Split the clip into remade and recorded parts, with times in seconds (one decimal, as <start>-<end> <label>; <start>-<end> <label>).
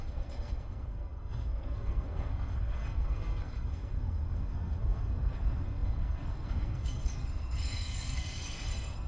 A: 0.0-9.1 remade